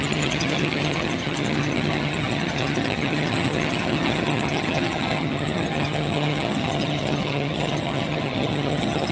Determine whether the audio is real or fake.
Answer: fake